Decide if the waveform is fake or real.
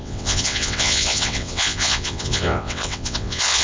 fake